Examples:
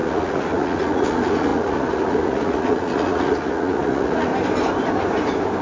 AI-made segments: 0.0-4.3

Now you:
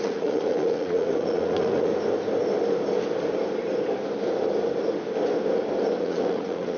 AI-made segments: 0.0-1.9; 6.0-6.8

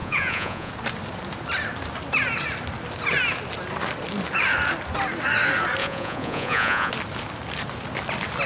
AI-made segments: 0.0-0.7; 5.8-6.9

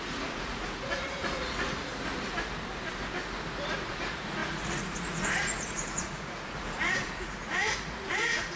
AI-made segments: 0.0-1.9; 3.6-8.6

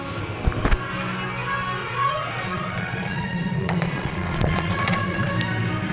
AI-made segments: 1.8-5.3

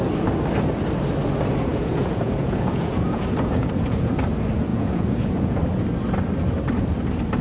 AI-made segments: 1.7-4.2; 4.7-5.6

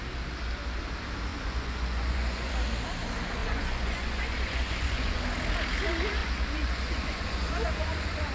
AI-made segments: 1.3-2.5; 3.4-5.2; 6.2-8.3